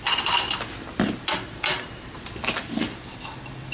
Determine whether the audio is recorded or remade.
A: recorded